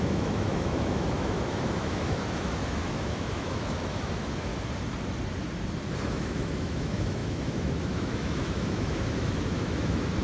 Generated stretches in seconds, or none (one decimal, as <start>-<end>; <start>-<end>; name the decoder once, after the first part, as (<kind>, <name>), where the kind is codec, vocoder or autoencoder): 0.0-4.5 (autoencoder, DAC-VAE); 6.0-10.2